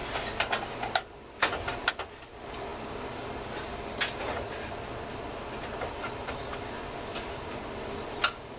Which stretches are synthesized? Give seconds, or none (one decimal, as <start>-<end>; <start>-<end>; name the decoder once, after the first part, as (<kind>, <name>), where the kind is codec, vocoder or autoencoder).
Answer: none